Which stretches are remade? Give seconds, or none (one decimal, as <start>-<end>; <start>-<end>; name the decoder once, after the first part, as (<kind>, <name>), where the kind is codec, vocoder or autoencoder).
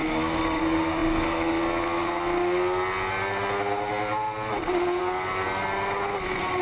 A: 0.0-0.6 (codec, DAC)